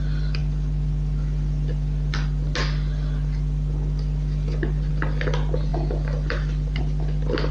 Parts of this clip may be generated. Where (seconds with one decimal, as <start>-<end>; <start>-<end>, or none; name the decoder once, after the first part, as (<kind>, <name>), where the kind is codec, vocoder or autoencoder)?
none